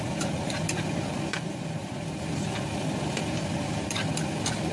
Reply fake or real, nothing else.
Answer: real